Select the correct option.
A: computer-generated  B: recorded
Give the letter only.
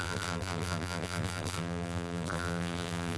A